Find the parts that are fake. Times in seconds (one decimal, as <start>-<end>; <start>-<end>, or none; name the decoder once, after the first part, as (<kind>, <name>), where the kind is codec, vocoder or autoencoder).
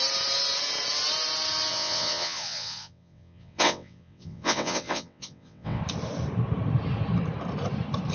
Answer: 1.7-5.8 (vocoder, WaveNeXt)